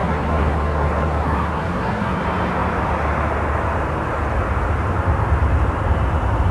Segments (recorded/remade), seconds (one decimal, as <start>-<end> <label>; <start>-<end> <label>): 0.0-2.2 remade; 2.2-6.5 recorded